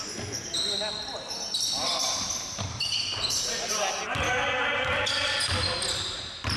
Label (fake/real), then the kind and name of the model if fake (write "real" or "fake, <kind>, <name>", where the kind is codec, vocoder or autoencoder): real